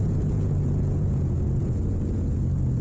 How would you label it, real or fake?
fake